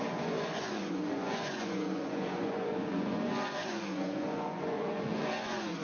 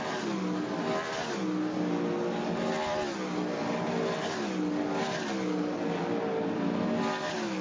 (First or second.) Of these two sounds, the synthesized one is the first